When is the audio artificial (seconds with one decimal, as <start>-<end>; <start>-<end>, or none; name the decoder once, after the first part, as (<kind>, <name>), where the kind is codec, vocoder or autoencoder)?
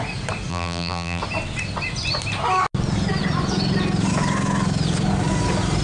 0.5-1.2 (vocoder, BigVGAN v2)